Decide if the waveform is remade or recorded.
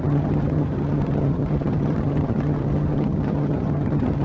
remade